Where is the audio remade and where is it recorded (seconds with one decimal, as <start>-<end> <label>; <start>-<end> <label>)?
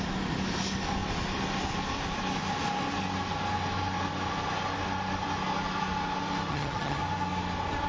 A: 0.0-6.5 recorded; 6.5-7.0 remade; 7.0-7.9 recorded